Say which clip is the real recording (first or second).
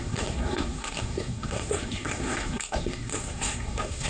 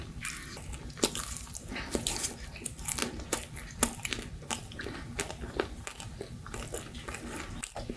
second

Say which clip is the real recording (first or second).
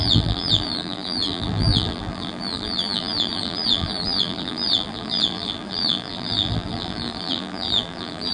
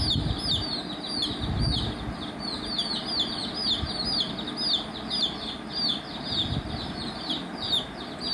second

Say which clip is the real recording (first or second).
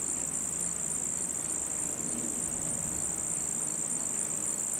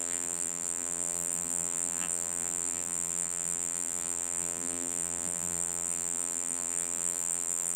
first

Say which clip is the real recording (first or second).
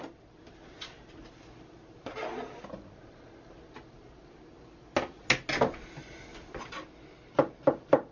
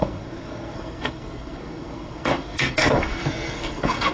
first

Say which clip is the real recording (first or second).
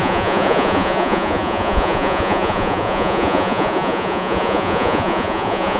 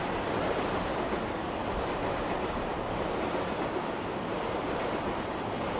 second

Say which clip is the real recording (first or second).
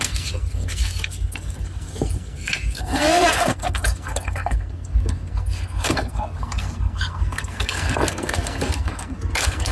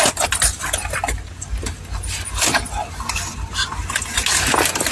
second